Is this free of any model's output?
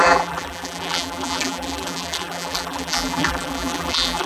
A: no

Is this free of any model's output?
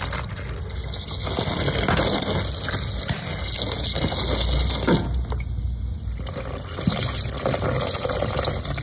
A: yes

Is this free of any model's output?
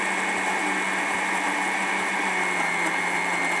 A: yes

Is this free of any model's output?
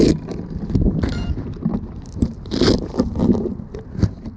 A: yes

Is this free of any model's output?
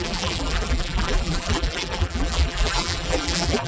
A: no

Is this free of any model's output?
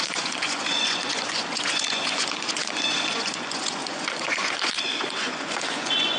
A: no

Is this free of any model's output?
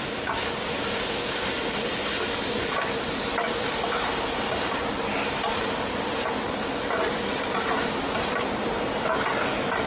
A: yes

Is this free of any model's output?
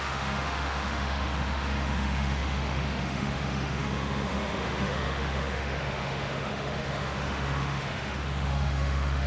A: no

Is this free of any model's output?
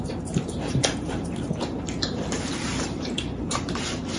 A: no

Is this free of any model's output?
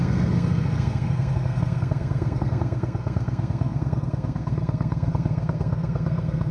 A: no